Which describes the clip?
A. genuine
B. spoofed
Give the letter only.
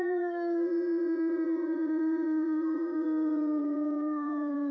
B